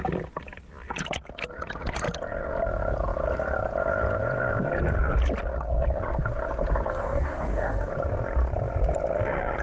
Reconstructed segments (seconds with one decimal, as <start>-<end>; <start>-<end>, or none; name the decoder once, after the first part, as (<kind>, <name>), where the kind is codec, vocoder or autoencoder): 6.9-7.9 (codec, DAC)